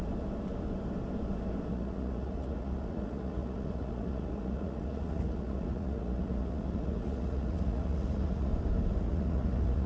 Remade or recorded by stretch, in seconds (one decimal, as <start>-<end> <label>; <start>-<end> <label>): 0.0-1.7 recorded; 1.7-8.5 remade; 8.5-9.0 recorded; 9.0-9.9 remade